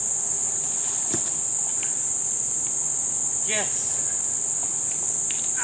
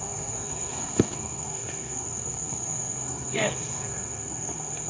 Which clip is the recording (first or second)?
first